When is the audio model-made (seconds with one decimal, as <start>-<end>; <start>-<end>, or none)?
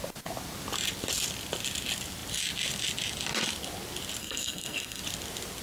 4.2-5.0